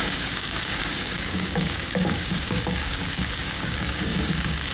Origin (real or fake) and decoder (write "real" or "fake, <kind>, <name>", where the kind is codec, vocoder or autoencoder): fake, codec, DAC